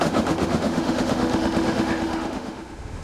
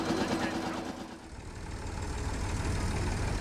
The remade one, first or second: first